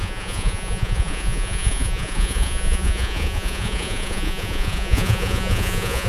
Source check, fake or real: fake